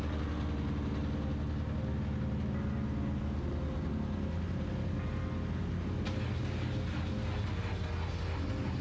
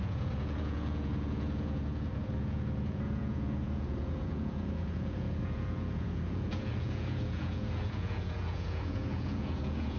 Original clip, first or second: first